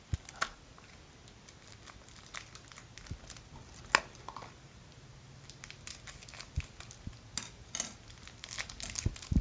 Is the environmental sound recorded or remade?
recorded